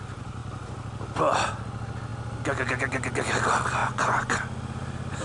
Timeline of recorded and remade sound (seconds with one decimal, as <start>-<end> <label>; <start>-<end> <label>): 0.0-3.8 recorded; 3.8-4.4 remade; 4.4-5.2 recorded